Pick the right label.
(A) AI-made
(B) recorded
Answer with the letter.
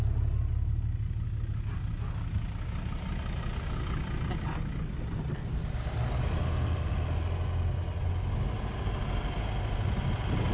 B